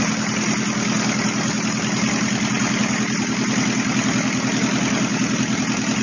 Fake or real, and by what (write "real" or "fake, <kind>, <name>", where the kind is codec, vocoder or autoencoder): real